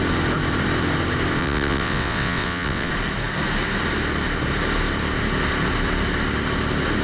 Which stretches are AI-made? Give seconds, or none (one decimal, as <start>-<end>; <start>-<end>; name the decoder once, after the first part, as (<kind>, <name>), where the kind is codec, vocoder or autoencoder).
1.4-2.9 (vocoder, WaveNeXt)